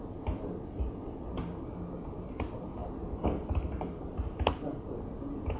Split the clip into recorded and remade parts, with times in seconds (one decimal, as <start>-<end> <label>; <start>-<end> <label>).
0.0-5.6 recorded